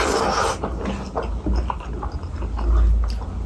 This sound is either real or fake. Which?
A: real